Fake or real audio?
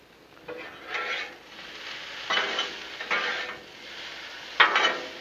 real